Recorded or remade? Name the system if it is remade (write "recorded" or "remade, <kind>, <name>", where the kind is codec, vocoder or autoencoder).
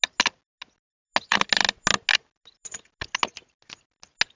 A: recorded